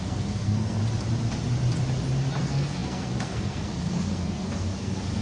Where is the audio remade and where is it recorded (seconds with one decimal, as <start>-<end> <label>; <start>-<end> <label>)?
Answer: 0.0-0.8 remade; 0.8-2.4 recorded; 2.4-5.2 remade